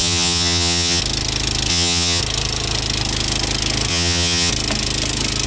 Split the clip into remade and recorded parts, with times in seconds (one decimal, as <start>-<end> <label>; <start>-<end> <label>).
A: 0.0-1.0 remade; 1.0-1.7 recorded; 1.7-2.2 remade; 2.2-3.9 recorded; 3.9-4.5 remade; 4.5-5.5 recorded